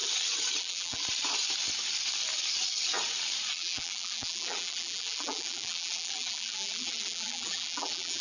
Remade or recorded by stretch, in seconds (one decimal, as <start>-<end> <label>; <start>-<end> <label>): 0.0-0.6 recorded; 0.6-1.0 remade; 1.0-3.5 recorded; 3.5-8.2 remade